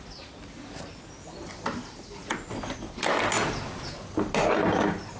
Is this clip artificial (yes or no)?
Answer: no